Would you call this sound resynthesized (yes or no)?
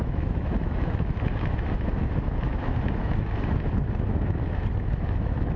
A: yes